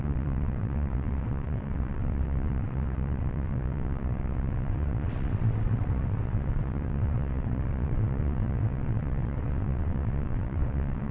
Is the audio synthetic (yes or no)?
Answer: yes